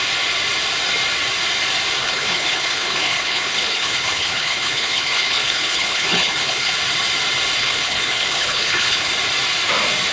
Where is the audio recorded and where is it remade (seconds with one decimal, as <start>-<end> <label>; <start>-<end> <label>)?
0.0-2.0 recorded; 2.0-6.7 remade; 6.7-7.6 recorded; 7.6-9.1 remade; 9.1-10.1 recorded